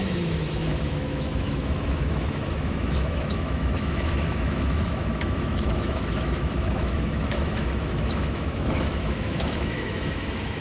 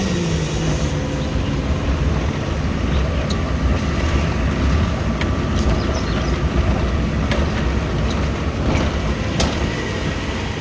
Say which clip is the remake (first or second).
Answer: first